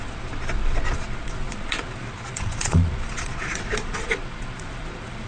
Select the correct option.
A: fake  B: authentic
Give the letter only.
A